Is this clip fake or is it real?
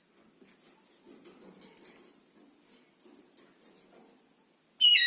real